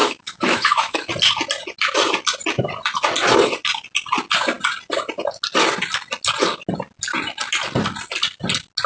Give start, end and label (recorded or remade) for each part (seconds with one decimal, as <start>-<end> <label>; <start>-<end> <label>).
0.0-1.1 remade; 1.1-8.9 recorded